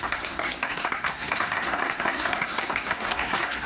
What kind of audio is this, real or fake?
fake